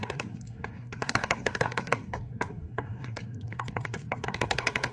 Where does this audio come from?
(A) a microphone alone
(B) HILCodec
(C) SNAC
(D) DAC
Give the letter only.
C